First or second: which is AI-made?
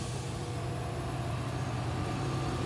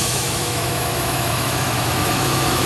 second